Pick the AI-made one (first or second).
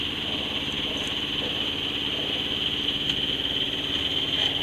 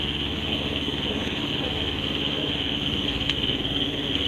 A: second